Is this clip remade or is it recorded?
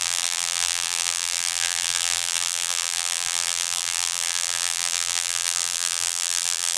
remade